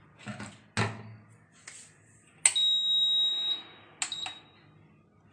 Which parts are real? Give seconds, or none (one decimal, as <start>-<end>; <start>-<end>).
0.0-5.3